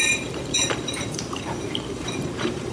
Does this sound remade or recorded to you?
remade